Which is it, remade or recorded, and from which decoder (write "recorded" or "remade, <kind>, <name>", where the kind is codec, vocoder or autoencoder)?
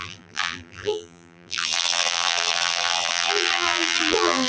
remade, vocoder, BigVGAN v2